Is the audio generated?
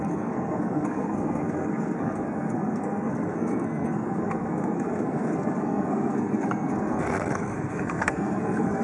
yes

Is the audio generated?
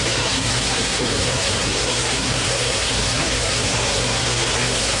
yes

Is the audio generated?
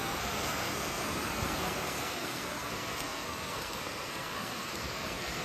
yes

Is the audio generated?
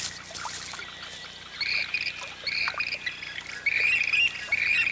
no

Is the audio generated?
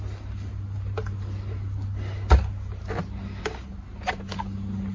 no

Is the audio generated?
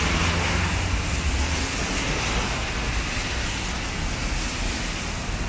no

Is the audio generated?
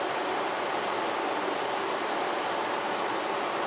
no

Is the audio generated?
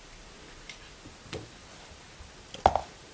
no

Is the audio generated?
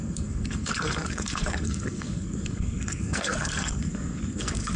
yes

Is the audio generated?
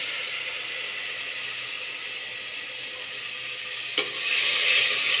no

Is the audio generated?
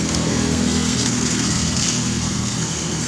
yes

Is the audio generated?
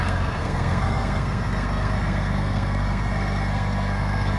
yes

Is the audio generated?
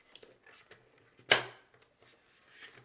no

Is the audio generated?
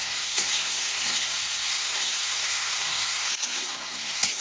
yes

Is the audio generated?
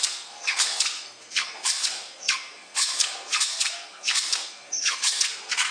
yes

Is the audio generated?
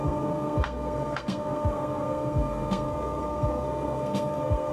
yes